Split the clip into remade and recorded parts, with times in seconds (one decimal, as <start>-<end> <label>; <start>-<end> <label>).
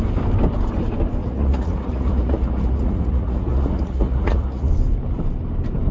0.0-1.2 recorded; 1.2-4.7 remade; 4.7-5.9 recorded